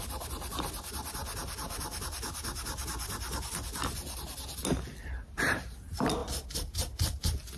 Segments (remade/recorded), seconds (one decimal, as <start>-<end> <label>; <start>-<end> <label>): 0.0-7.6 recorded